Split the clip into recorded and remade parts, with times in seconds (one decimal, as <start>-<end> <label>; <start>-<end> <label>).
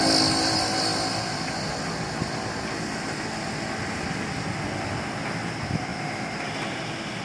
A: 0.0-7.2 recorded